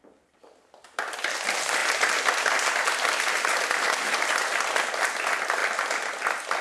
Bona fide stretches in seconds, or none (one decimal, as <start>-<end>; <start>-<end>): 0.0-6.6